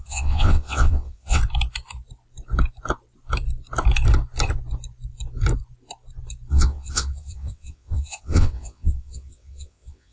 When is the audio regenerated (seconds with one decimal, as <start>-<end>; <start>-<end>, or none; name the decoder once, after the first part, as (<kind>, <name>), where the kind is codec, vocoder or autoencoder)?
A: 0.0-1.4 (vocoder, WaveNeXt); 6.5-10.1